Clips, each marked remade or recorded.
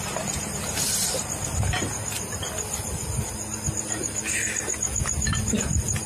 recorded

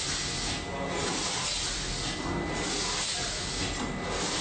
recorded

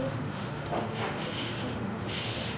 remade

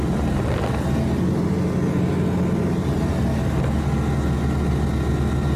recorded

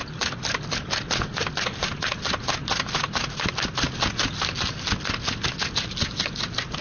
recorded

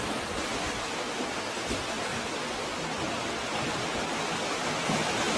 recorded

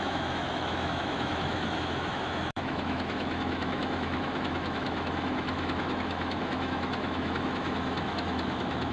remade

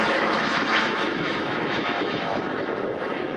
remade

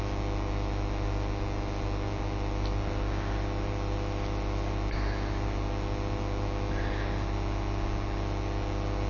recorded